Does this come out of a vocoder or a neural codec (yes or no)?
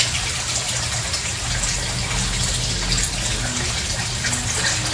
no